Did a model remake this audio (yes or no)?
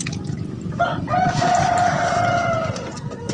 no